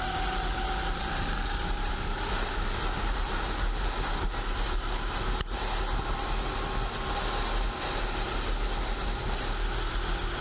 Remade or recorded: recorded